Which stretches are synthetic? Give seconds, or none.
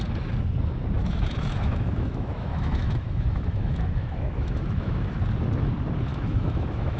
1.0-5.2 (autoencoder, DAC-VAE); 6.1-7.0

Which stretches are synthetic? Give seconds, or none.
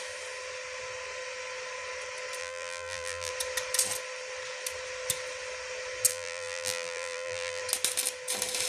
2.4-3.3 (vocoder, BigVGAN v2); 6.1-7.6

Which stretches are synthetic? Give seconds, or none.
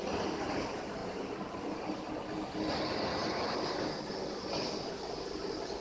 1.0-2.1 (vocoder, BigVGAN v2); 3.1-3.8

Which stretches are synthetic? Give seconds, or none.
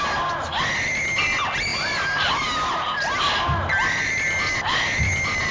none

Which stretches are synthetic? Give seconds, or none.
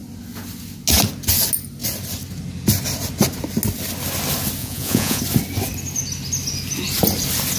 4.6-5.2 (vocoder, Vocos)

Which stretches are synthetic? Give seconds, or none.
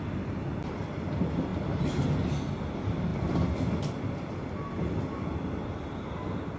none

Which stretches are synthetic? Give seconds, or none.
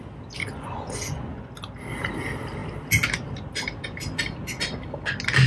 0.4-1.5 (vocoder, Vocos)